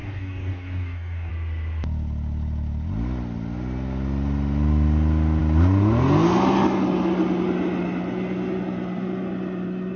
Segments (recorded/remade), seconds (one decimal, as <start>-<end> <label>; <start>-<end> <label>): 0.0-1.3 remade; 1.3-10.0 recorded